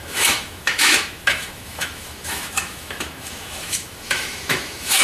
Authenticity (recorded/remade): remade